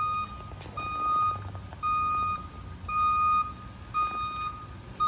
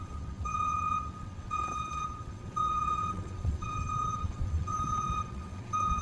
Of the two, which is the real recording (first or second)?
first